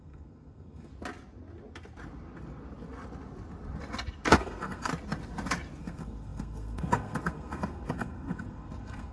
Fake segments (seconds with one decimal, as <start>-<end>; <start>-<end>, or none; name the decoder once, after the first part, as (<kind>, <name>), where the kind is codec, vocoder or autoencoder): 0.0-0.9 (codec, SNAC); 4.3-4.9; 5.8-9.1